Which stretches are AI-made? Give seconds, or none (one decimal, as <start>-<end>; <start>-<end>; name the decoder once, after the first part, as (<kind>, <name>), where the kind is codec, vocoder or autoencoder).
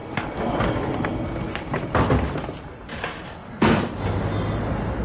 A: none